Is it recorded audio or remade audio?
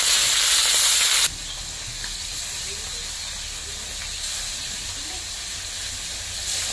recorded